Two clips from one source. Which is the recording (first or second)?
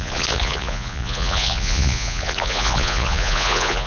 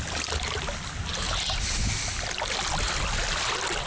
second